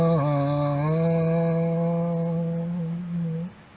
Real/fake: real